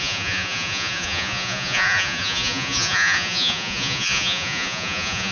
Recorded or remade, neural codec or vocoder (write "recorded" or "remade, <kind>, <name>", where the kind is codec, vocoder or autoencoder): remade, vocoder, Vocos